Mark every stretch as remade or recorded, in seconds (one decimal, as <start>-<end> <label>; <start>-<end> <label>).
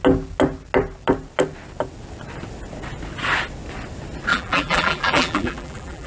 0.0-4.3 recorded; 4.3-6.1 remade